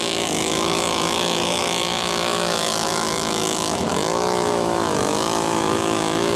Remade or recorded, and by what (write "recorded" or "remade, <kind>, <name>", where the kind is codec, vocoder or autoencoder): remade, autoencoder, DAC-VAE